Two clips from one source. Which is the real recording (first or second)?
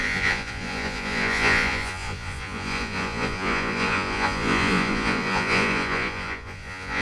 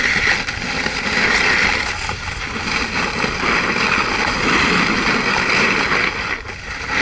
second